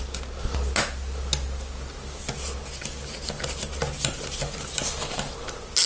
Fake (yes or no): no